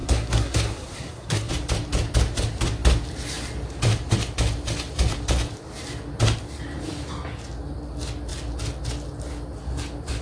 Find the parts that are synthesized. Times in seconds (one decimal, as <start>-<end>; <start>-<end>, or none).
0.0-1.5